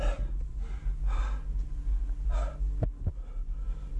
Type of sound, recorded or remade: recorded